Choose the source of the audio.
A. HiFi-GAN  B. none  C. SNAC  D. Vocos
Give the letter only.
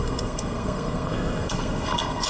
C